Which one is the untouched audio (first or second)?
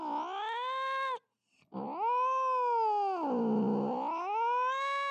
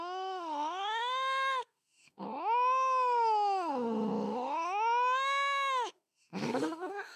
first